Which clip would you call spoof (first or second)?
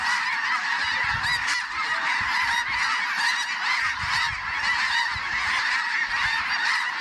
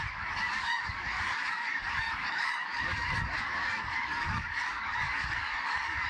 second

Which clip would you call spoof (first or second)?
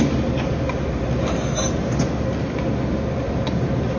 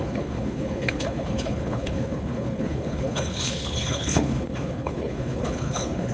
second